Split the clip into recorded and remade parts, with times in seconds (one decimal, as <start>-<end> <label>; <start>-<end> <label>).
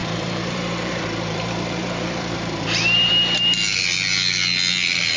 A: 0.0-3.1 remade; 3.1-5.2 recorded